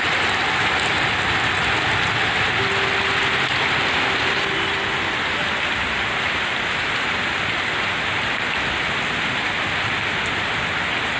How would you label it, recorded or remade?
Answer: recorded